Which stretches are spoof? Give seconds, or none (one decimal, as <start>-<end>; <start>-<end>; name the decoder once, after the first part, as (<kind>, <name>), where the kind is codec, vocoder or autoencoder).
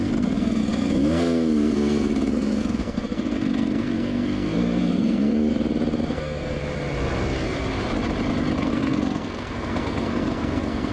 0.0-5.4 (codec, SNAC); 6.1-6.6; 8.6-10.9